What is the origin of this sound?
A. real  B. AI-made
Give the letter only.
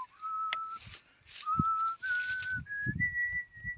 A